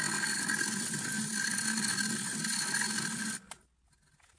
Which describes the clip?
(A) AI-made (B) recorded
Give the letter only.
B